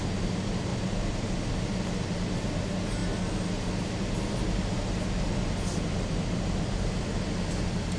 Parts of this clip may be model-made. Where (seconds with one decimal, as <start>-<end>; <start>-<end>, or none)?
none